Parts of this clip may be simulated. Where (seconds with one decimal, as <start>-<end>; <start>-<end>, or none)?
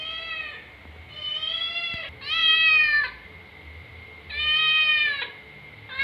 none